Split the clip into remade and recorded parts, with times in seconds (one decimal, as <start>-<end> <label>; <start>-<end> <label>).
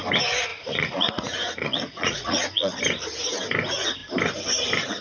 0.0-0.5 recorded; 0.5-2.8 remade; 2.8-5.0 recorded